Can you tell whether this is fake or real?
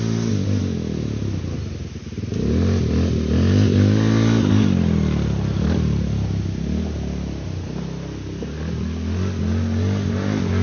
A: real